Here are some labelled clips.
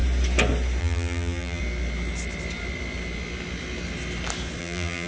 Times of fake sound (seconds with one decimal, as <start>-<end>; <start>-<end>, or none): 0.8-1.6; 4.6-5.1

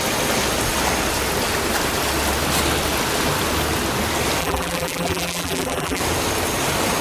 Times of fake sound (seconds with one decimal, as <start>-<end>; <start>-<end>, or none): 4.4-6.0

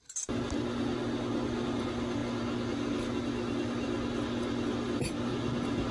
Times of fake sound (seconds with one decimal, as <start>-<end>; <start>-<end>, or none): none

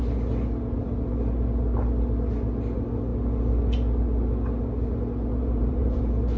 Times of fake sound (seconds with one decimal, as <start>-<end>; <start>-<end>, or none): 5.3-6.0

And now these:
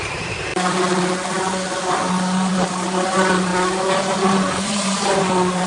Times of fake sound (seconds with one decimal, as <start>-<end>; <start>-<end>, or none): 0.0-0.5; 2.5-3.5; 4.6-5.7

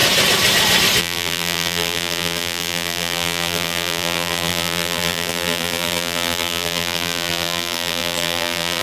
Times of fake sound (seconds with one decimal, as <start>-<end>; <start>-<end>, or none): 1.0-8.8

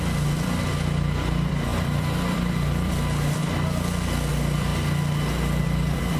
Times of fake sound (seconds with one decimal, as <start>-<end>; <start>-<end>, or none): 0.0-3.4; 4.3-4.7; 5.6-6.2

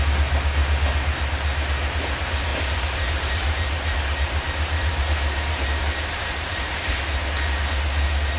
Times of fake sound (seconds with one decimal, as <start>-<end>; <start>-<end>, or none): 2.5-7.0